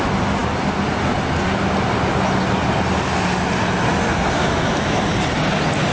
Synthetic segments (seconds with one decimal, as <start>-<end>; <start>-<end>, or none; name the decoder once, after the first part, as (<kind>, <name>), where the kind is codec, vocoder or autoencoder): 4.4-5.0 (autoencoder, DAC-VAE)